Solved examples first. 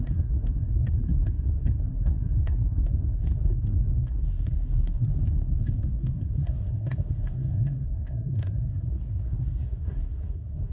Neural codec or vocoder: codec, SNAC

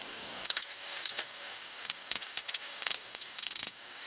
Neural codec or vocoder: codec, DAC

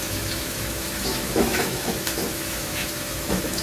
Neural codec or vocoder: autoencoder, DAC-VAE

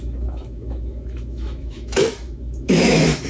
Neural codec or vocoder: autoencoder, DAC-VAE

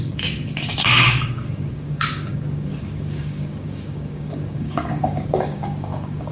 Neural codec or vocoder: codec, DAC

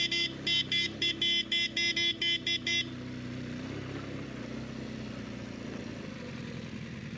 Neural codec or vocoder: none